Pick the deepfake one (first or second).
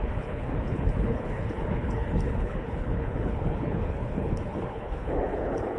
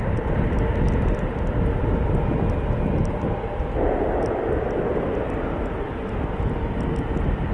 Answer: first